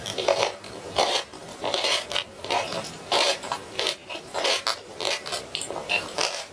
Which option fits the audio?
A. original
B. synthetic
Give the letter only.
B